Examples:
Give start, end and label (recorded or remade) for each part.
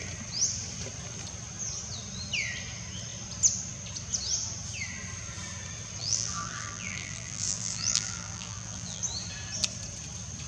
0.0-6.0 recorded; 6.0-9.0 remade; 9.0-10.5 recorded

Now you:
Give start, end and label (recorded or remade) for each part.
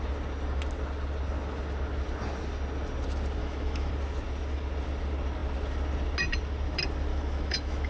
0.0-3.4 recorded; 3.4-3.9 remade; 3.9-7.1 recorded; 7.1-7.9 remade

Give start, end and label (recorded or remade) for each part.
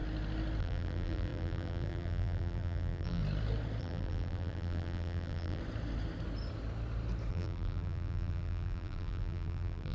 0.0-0.6 recorded; 0.6-3.2 remade; 3.2-3.8 recorded; 3.8-5.6 remade; 5.6-7.3 recorded; 7.3-9.9 remade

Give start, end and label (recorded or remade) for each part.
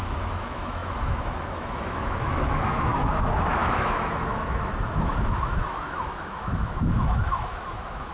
0.0-8.1 remade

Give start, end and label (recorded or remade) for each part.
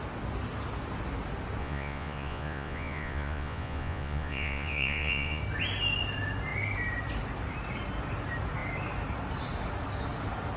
0.0-1.6 recorded; 1.6-5.4 remade; 5.4-10.6 recorded